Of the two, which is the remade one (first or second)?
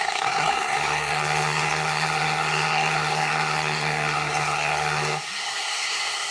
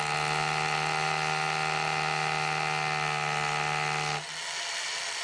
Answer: first